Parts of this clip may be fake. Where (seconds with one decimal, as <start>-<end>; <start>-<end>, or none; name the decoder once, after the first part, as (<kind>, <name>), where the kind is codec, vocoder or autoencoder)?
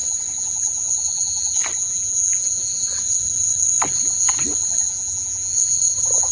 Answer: none